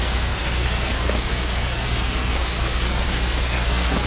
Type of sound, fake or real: fake